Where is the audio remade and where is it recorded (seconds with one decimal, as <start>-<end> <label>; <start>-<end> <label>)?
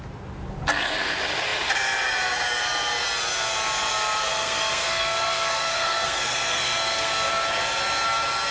0.0-4.3 recorded; 4.3-7.3 remade; 7.3-8.5 recorded